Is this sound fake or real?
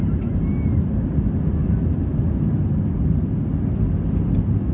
real